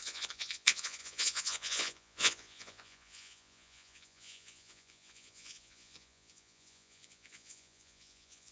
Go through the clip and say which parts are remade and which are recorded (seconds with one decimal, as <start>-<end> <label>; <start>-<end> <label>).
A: 0.0-8.5 remade